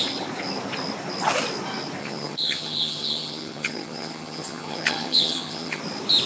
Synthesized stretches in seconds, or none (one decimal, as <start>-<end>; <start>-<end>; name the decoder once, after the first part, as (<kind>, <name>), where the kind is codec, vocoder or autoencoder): 2.0-5.8 (vocoder, HiFi-GAN)